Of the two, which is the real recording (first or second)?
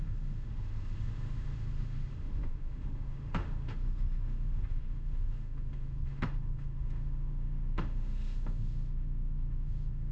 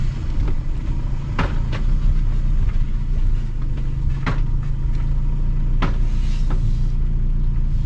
second